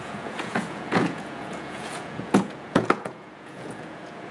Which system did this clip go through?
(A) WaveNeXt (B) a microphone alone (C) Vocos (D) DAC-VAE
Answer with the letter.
C